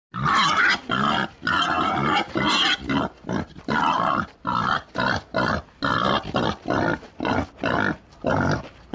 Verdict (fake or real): real